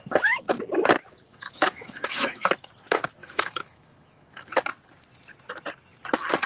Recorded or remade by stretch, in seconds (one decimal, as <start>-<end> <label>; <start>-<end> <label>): 0.0-1.3 recorded; 1.3-2.5 remade; 2.5-3.2 recorded; 3.2-4.6 remade; 4.6-6.5 recorded